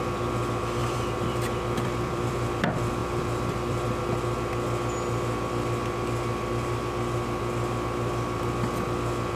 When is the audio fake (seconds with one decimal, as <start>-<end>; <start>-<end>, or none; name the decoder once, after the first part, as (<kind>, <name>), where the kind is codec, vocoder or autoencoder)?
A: 0.8-2.5 (vocoder, BigVGAN v2); 3.0-4.0

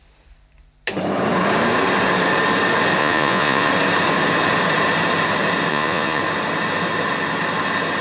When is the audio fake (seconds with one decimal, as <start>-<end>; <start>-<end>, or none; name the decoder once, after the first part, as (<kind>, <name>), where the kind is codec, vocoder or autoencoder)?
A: 3.0-3.7 (vocoder, Vocos); 5.7-6.2

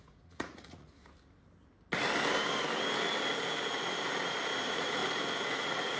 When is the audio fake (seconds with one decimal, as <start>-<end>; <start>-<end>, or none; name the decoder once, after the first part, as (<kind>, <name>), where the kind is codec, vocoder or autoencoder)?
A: 0.0-1.0 (vocoder, Vocos); 4.6-5.0; 5.6-6.0

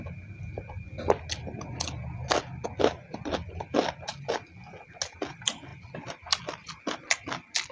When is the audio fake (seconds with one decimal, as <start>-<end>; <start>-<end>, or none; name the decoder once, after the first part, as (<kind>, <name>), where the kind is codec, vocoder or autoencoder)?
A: none